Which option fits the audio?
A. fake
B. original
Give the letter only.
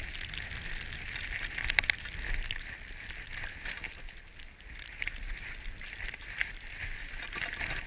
B